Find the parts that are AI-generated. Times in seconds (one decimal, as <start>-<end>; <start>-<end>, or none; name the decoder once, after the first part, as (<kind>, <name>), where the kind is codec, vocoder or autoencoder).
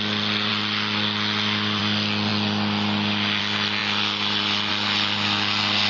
none